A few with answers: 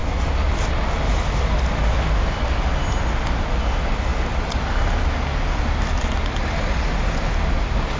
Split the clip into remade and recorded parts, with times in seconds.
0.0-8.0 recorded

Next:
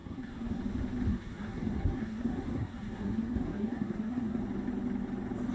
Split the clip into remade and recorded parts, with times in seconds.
0.0-0.6 remade; 0.6-1.1 recorded; 1.1-4.4 remade; 4.4-5.5 recorded

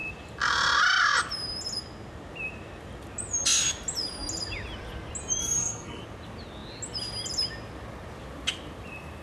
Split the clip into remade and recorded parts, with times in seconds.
0.0-5.4 recorded; 5.4-6.0 remade; 6.0-9.2 recorded

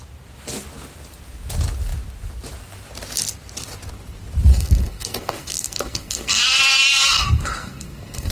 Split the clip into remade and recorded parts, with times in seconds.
0.0-4.5 recorded; 4.5-8.3 remade

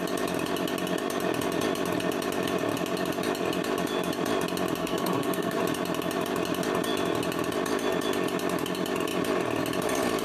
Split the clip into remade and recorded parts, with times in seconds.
0.0-4.8 recorded; 4.8-5.6 remade; 5.6-10.2 recorded

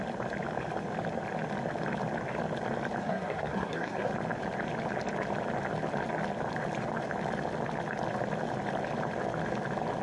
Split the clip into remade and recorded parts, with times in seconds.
0.0-3.0 recorded; 3.0-4.1 remade; 4.1-10.0 recorded

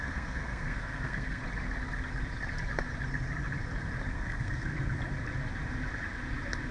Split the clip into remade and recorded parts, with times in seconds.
0.0-1.4 remade; 1.4-4.1 recorded; 4.1-4.7 remade; 4.7-6.7 recorded

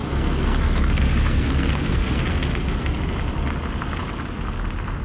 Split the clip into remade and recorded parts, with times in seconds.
0.0-3.0 remade; 3.0-5.0 recorded